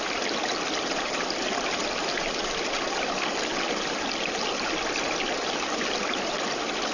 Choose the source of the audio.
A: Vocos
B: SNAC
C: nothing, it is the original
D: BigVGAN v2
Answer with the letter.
C